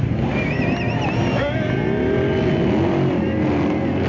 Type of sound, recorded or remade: recorded